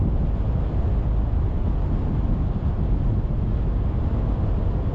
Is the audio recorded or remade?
recorded